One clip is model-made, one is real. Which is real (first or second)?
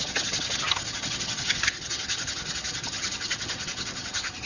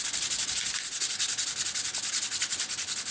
second